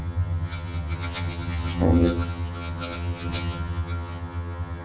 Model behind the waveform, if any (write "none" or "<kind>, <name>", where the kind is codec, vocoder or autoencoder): vocoder, HiFi-GAN